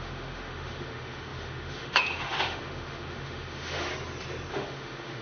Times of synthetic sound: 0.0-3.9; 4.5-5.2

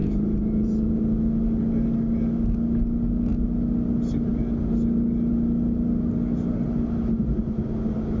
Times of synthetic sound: 0.0-1.0